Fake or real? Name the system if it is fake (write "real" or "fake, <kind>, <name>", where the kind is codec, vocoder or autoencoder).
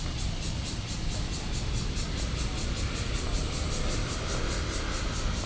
real